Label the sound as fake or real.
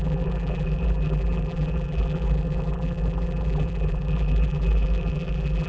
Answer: fake